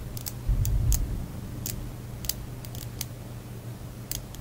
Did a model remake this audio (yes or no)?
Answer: no